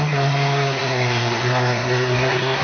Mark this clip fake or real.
fake